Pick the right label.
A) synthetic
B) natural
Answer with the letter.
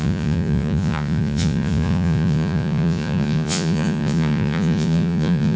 A